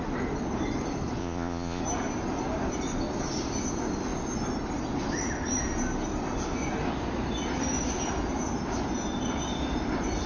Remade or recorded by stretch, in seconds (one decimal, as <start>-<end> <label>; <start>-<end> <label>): 0.0-1.2 recorded; 1.2-1.8 remade; 1.8-10.3 recorded